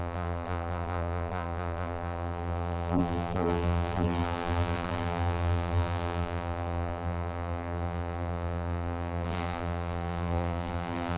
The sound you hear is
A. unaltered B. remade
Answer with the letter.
B